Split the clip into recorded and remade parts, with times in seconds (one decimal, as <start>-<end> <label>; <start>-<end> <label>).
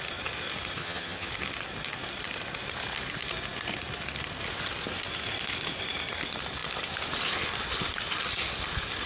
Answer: 0.0-0.8 recorded; 0.8-1.3 remade; 1.3-9.1 recorded